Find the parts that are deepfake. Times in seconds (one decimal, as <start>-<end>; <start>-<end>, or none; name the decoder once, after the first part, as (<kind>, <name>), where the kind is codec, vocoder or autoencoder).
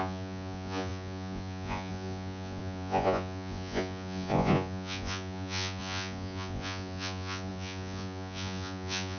0.0-9.2 (vocoder, Vocos)